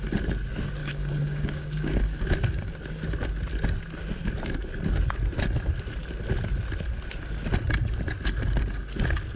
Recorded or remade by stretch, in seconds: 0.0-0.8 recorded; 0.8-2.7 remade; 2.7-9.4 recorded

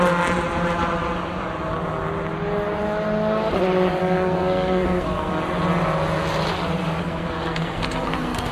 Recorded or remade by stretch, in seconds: 0.0-4.0 recorded; 4.0-5.3 remade; 5.3-7.0 recorded; 7.0-8.5 remade